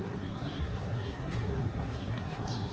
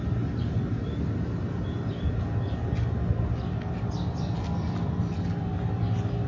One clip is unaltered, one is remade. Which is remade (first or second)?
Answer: first